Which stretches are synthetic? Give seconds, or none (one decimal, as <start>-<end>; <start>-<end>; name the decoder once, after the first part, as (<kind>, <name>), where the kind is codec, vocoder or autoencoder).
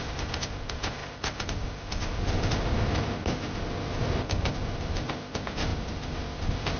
1.0-3.0 (vocoder, BigVGAN v2); 5.7-6.8